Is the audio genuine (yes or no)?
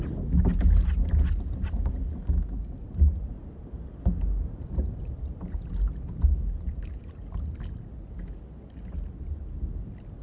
yes